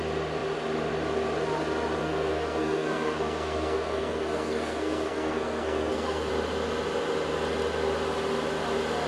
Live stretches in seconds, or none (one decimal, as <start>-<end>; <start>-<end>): 0.0-2.0; 6.3-9.1